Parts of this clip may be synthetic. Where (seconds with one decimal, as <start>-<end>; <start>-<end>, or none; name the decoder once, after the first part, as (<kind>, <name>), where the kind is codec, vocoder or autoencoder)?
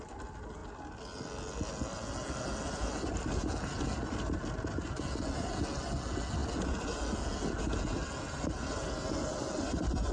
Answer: none